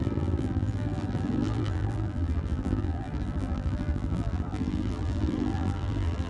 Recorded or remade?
remade